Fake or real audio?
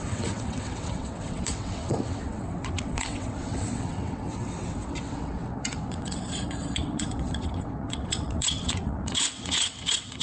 fake